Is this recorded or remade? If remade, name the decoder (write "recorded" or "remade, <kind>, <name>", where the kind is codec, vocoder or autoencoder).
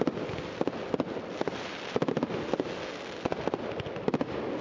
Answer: recorded